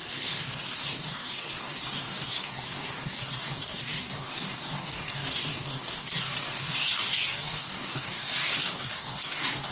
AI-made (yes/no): yes